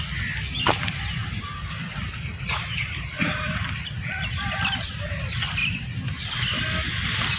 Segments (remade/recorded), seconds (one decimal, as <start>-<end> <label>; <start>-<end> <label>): 0.0-1.2 recorded; 1.2-5.1 remade; 5.1-7.4 recorded